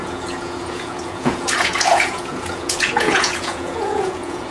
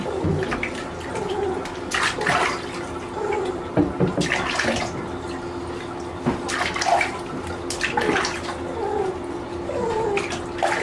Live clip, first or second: second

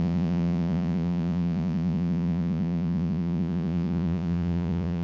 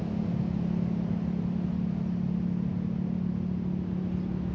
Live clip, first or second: second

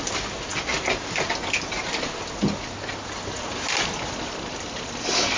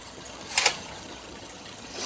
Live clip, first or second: first